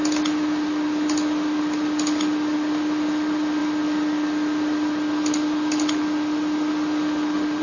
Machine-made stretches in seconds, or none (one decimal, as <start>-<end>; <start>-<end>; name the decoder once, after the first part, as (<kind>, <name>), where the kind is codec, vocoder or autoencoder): none